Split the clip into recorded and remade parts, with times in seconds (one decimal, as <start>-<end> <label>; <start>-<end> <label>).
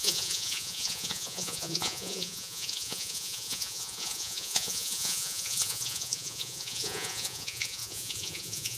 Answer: 0.0-8.8 remade